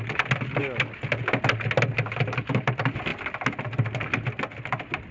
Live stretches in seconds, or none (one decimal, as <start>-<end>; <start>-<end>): 0.0-5.1